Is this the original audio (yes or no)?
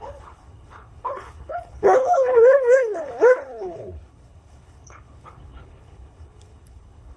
no